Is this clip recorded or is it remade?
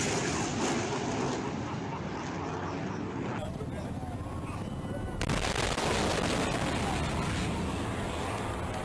recorded